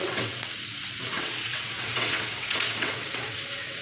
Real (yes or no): no